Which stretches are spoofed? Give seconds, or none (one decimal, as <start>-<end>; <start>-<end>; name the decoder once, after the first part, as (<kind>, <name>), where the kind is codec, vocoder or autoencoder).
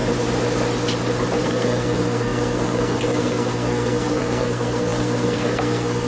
1.4-6.1 (codec, SNAC)